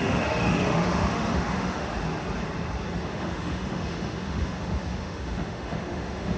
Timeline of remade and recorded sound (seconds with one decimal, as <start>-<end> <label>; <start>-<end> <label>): 0.0-1.9 remade; 1.9-3.0 recorded; 3.0-6.4 remade